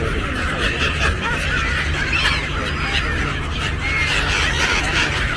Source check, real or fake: real